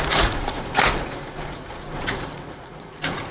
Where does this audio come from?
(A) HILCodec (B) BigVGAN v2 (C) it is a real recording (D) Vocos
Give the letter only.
D